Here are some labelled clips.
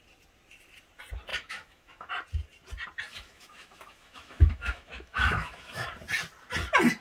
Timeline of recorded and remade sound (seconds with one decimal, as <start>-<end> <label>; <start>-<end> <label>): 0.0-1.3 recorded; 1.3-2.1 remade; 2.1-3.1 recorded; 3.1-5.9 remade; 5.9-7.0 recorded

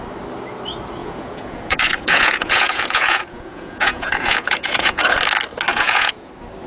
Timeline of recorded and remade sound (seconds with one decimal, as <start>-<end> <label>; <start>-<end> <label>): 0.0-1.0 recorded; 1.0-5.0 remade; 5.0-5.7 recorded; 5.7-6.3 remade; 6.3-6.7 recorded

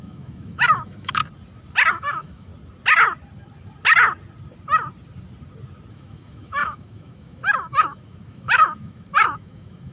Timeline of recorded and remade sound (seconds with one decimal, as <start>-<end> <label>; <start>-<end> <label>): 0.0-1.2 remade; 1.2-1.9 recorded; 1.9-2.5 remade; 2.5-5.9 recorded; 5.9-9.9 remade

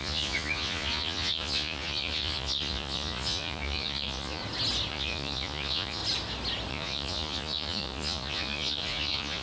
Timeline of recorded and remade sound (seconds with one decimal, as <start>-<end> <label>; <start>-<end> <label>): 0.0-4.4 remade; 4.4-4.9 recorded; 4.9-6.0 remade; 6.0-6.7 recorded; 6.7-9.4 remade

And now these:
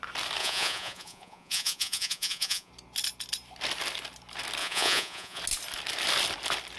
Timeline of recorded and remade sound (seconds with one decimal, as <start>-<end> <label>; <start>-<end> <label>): 0.0-0.4 recorded; 0.4-2.7 remade; 2.7-4.6 recorded; 4.6-5.4 remade; 5.4-6.8 recorded

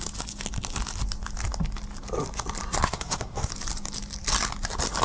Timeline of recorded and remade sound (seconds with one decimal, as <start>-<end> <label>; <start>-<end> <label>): 0.0-2.8 recorded; 2.8-3.5 remade; 3.5-5.0 recorded

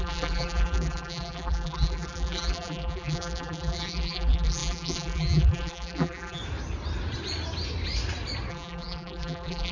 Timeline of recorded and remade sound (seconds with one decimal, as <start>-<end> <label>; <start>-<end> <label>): 0.0-6.4 remade; 6.4-8.5 recorded; 8.5-9.7 remade

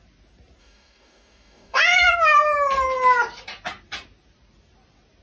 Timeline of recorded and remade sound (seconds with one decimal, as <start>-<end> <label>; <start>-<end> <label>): 0.0-0.6 recorded; 0.6-1.8 remade; 1.8-5.2 recorded